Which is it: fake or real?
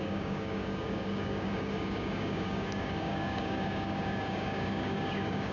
fake